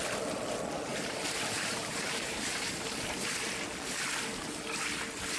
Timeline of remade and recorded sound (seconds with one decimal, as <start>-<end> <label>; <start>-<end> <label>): 0.0-0.9 recorded; 0.9-3.5 remade; 3.5-5.4 recorded

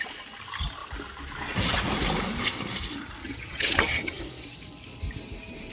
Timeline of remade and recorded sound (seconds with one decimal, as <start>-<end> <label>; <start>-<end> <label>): 0.0-3.2 recorded; 3.2-4.2 remade; 4.2-5.7 recorded

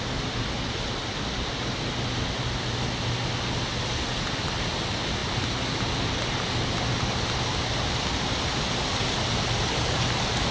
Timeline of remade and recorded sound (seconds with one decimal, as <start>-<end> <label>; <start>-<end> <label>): 0.0-10.5 recorded

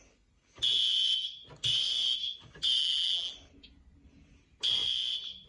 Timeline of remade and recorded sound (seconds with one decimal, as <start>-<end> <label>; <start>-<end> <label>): 0.0-2.8 recorded; 2.8-3.3 remade; 3.3-5.5 recorded